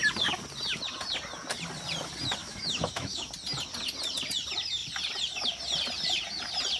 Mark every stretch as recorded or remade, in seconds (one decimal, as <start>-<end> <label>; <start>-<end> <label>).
0.0-2.4 recorded; 2.4-3.3 remade; 3.3-6.8 recorded